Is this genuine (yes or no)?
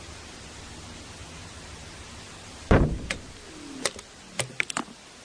yes